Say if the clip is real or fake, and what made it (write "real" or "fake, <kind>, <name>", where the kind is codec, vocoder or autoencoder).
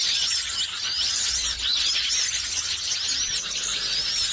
real